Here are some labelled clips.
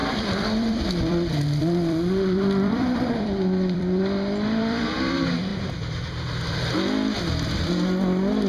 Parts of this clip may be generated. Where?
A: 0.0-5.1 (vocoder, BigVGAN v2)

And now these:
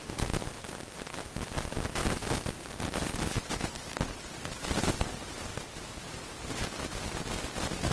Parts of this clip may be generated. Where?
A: 2.0-2.6 (vocoder, BigVGAN v2)

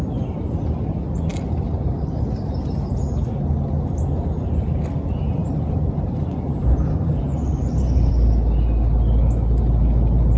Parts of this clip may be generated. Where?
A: 5.4-8.1 (vocoder, BigVGAN v2)

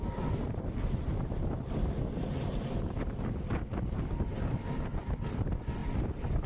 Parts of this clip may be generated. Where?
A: 1.1-4.0 (vocoder, BigVGAN v2); 5.8-6.5

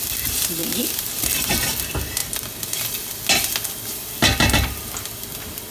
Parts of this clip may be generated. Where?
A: 0.6-1.5 (vocoder, BigVGAN v2)